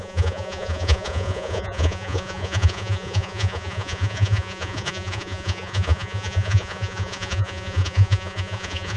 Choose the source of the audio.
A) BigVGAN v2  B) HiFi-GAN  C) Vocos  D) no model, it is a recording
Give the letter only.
C